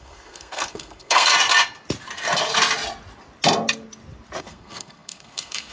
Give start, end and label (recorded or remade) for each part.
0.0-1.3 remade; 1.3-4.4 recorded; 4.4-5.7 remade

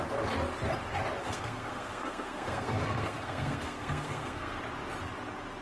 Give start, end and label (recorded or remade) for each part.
0.0-1.2 recorded; 1.2-4.6 remade; 4.6-5.6 recorded

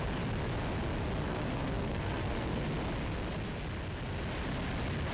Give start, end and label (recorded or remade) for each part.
0.0-1.2 recorded; 1.2-2.6 remade; 2.6-5.1 recorded